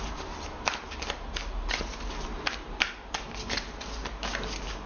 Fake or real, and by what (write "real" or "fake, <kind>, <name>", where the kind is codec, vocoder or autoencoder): real